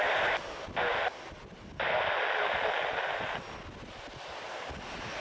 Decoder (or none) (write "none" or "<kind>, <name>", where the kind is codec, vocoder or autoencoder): none